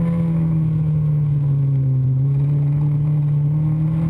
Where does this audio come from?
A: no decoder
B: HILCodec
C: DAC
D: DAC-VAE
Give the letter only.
A